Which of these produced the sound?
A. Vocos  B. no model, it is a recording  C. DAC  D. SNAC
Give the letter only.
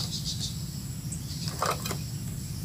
B